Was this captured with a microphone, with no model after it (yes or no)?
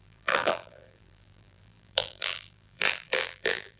no